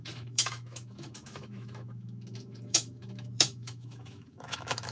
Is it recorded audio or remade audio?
remade